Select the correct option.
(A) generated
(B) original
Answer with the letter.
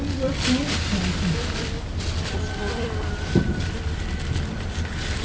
B